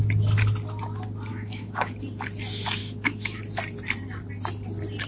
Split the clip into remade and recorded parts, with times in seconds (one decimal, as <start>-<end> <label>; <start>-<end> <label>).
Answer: 0.0-1.3 recorded; 1.3-1.9 remade; 1.9-2.8 recorded; 2.8-3.4 remade; 3.4-5.1 recorded